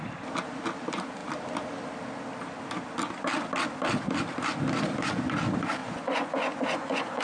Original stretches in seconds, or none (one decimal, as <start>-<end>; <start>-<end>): 0.0-5.8